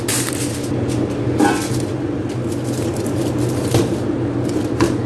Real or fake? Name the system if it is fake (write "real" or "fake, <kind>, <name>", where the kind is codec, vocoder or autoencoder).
real